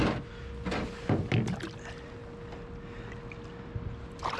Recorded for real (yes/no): yes